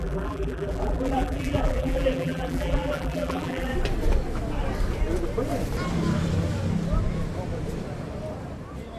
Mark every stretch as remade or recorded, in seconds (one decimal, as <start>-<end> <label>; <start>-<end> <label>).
0.0-3.7 remade; 3.7-9.0 recorded